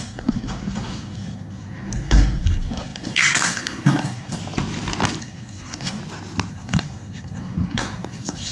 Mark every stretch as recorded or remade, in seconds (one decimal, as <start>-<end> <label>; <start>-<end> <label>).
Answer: 0.0-4.4 remade; 4.4-5.2 recorded; 5.2-6.0 remade; 6.0-6.5 recorded; 6.5-8.5 remade